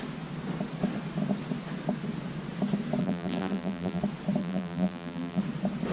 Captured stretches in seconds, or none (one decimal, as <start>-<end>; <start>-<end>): 0.0-3.0; 4.0-4.4; 5.4-5.9